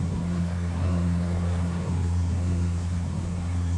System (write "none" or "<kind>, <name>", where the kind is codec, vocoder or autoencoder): codec, SNAC